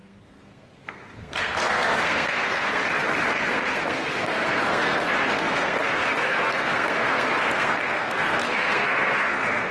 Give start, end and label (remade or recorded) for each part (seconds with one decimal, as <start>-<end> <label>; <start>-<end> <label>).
0.0-2.8 remade; 2.8-3.3 recorded; 3.3-9.7 remade

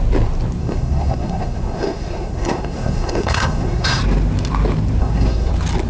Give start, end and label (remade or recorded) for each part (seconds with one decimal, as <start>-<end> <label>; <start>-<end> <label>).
0.0-0.6 recorded; 0.6-4.0 remade; 4.0-5.0 recorded; 5.0-5.5 remade; 5.5-5.9 recorded

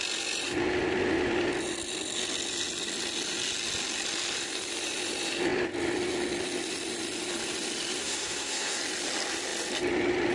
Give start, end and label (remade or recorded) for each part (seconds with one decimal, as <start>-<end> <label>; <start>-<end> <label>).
0.0-8.0 recorded; 8.0-8.8 remade; 8.8-10.3 recorded

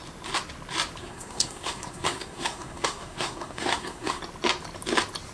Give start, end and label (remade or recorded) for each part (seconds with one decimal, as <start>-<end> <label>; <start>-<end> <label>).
0.0-1.0 recorded; 1.0-4.2 remade; 4.2-5.3 recorded

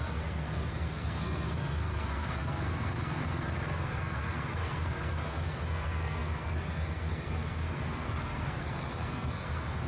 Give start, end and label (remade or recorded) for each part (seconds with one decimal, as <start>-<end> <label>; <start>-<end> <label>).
0.0-9.9 remade

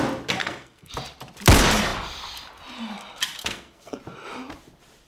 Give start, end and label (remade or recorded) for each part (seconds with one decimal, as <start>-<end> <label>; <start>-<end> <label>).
0.0-0.4 recorded; 0.4-0.9 remade; 0.9-3.4 recorded; 3.4-4.0 remade; 4.0-5.1 recorded